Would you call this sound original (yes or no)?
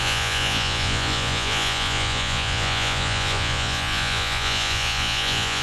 no